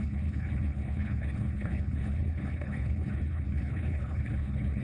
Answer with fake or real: fake